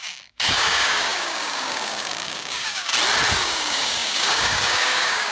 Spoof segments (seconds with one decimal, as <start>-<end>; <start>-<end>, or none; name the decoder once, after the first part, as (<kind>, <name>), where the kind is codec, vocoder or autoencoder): 0.0-2.9 (codec, DAC); 3.4-5.3